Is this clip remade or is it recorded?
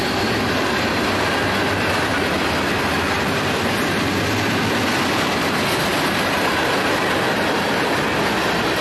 recorded